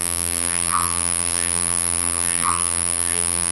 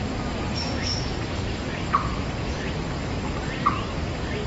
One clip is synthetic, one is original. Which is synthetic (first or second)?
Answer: first